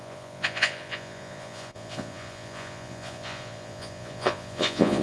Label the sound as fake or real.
fake